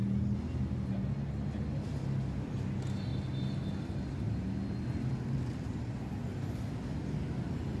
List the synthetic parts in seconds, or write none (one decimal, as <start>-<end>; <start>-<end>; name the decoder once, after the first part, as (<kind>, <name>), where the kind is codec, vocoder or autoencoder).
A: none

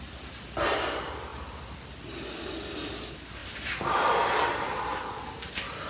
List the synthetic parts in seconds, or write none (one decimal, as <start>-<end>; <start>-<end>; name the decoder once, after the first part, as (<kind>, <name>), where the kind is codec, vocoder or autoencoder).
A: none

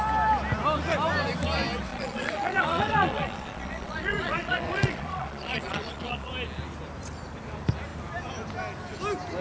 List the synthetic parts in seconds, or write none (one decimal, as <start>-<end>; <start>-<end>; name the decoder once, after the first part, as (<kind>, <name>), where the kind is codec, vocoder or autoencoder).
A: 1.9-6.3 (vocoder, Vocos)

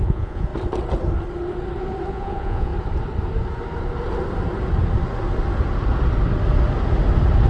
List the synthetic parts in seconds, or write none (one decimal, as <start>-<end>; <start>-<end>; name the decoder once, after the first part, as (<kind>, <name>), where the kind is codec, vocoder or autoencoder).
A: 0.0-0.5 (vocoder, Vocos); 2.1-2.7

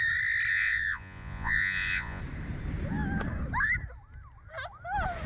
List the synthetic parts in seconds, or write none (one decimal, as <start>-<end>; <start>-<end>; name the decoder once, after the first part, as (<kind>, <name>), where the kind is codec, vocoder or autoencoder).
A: 0.5-2.2 (vocoder, Vocos)

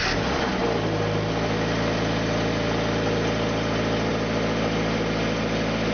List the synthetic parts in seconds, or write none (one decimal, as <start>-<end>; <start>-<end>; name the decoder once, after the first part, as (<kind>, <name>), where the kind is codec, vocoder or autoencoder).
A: none

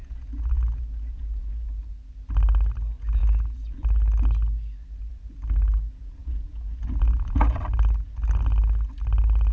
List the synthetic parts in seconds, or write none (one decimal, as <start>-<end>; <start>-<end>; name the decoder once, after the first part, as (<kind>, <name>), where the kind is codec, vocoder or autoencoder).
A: 0.0-1.8 (vocoder, Vocos); 6.2-7.6

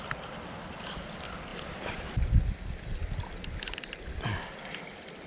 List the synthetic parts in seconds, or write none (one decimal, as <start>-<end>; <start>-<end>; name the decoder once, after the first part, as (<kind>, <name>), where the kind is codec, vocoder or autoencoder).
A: 1.5-2.3 (vocoder, BigVGAN v2)